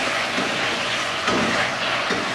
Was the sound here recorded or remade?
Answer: remade